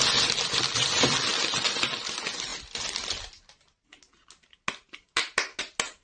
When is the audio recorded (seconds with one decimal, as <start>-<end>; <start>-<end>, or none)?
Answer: 0.0-6.0